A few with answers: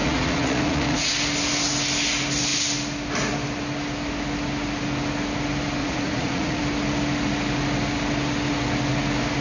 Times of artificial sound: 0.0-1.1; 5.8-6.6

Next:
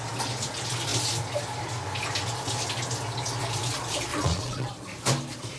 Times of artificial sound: 4.1-4.7

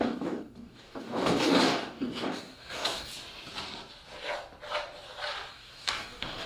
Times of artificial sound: 0.0-3.1; 5.5-6.5

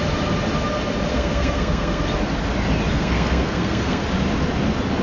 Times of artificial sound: 1.1-2.0; 2.9-4.0

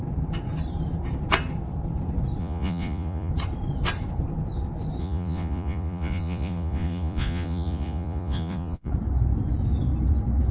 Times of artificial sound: 2.4-3.3; 5.0-8.9

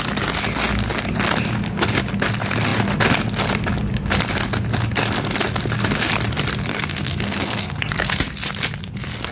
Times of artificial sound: 6.7-8.2

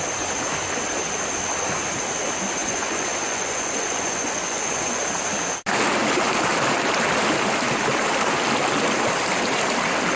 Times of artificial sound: 2.6-5.0

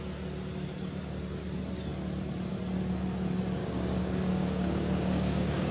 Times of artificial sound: 3.6-5.7